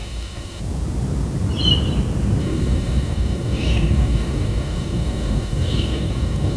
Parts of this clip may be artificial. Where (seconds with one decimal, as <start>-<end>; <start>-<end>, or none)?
0.0-0.6; 2.4-6.6